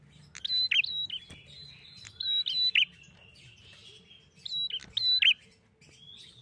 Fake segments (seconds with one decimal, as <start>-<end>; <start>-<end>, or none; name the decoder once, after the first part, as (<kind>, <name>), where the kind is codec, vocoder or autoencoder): none